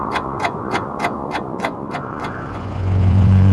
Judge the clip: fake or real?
fake